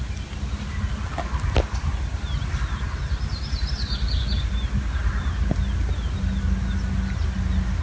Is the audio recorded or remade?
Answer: recorded